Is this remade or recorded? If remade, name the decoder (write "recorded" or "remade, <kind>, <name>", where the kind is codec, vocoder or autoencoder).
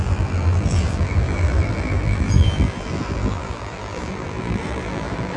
remade, vocoder, BigVGAN v2